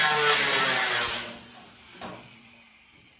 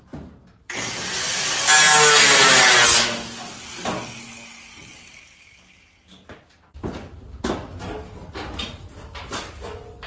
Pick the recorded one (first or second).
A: second